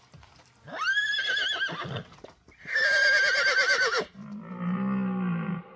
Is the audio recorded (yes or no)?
no